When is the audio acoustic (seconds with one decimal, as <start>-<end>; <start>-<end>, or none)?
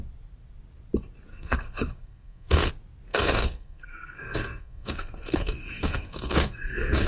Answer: 0.0-1.3; 2.7-3.1